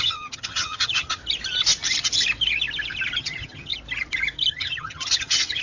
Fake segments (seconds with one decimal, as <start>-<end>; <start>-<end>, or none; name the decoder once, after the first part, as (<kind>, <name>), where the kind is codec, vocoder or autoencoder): 0.0-1.2 (vocoder, HiFi-GAN); 3.2-3.7; 4.5-5.6